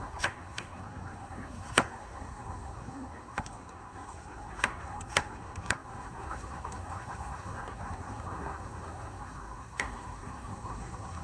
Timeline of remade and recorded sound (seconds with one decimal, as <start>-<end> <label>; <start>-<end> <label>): 0.0-11.2 remade